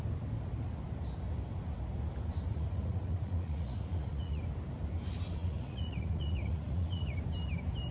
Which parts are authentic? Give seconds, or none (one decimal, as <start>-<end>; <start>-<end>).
0.0-2.5; 4.4-5.4; 7.2-7.9